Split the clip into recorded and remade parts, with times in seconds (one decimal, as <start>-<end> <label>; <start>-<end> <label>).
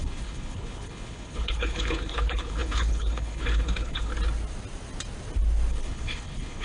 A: 0.0-4.1 remade; 4.1-5.7 recorded; 5.7-6.6 remade